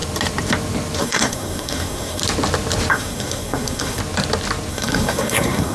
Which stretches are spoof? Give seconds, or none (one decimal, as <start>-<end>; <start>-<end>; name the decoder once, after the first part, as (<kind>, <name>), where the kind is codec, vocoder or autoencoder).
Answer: 1.0-2.2 (codec, SNAC); 2.9-4.0; 4.7-5.7